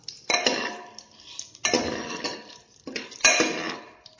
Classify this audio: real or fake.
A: real